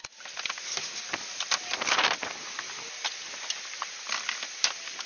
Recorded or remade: remade